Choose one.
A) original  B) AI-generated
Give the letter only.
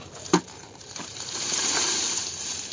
B